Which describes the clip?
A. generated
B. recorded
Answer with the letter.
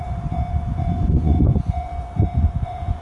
A